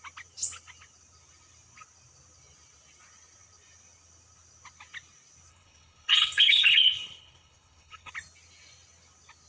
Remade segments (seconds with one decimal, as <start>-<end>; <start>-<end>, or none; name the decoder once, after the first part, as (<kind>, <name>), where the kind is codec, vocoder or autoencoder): 5.5-8.1 (codec, HILCodec)